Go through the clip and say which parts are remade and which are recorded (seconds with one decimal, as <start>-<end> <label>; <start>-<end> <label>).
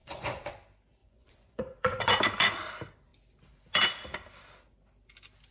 0.0-0.5 remade; 0.5-1.0 recorded; 1.0-2.1 remade; 2.1-5.5 recorded